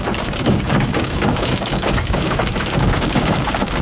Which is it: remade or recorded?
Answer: remade